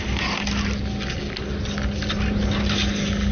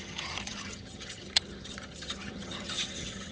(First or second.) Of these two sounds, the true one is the first